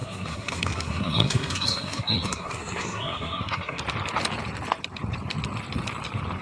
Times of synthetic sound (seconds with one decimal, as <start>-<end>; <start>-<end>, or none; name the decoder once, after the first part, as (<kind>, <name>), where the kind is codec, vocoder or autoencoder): 0.0-3.8 (codec, SNAC)